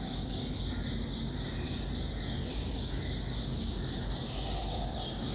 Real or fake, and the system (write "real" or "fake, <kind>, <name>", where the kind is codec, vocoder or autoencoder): real